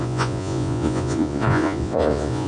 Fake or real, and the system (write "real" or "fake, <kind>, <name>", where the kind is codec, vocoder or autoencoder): fake, vocoder, Vocos